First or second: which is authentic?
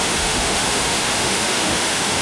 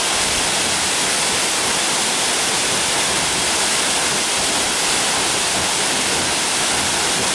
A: second